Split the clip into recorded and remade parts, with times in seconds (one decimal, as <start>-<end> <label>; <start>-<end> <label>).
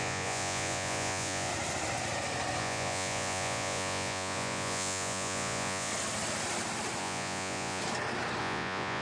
0.0-1.5 remade; 1.5-2.6 recorded; 2.6-5.9 remade; 5.9-7.0 recorded; 7.0-7.8 remade; 7.8-8.4 recorded; 8.4-9.0 remade